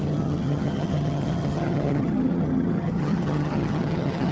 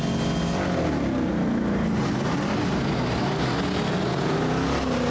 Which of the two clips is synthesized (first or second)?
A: first